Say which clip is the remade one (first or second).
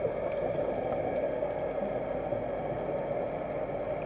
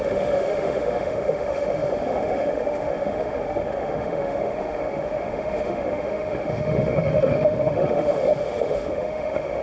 second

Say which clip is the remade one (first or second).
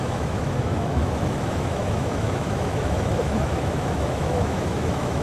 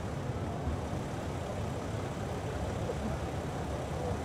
first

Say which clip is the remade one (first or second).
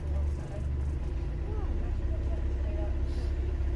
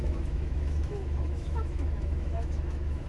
second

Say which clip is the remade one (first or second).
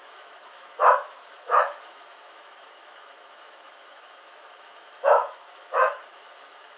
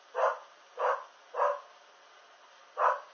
first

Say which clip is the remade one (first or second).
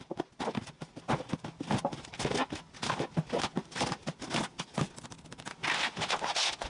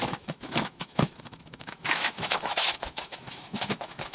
second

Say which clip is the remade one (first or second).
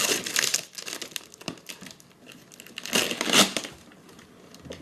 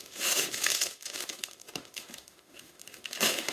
second